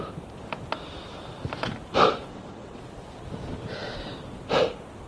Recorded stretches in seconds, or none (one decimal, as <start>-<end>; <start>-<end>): 0.0-2.3; 2.8-5.1